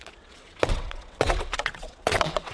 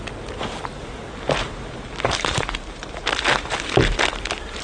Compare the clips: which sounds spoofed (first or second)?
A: first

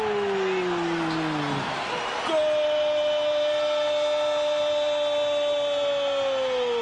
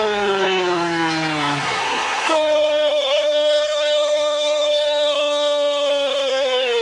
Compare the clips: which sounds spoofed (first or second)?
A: second